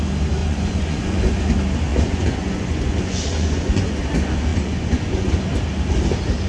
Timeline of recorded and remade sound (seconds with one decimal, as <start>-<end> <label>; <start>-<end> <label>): 0.0-0.4 recorded; 0.4-1.4 remade; 1.4-1.9 recorded; 1.9-4.0 remade; 4.0-4.5 recorded; 4.5-5.3 remade; 5.3-6.5 recorded

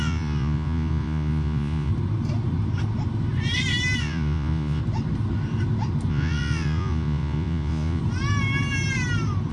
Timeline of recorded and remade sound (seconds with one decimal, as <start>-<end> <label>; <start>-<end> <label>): 0.0-1.9 remade; 1.9-4.0 recorded; 4.0-4.8 remade; 4.8-6.1 recorded; 6.1-8.0 remade; 8.0-9.5 recorded

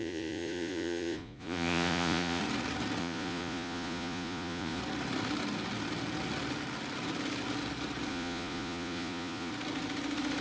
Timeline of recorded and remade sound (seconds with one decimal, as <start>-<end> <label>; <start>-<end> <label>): 0.0-2.4 remade; 2.4-3.0 recorded; 3.0-4.8 remade; 4.8-8.1 recorded; 8.1-9.5 remade; 9.5-10.4 recorded